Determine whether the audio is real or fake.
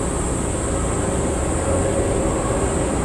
real